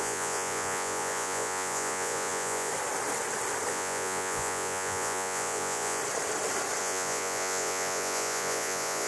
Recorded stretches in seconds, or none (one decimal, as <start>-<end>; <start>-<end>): 2.7-3.7; 6.0-6.8

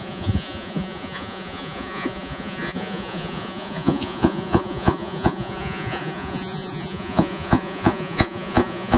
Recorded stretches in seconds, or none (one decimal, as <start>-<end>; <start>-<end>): none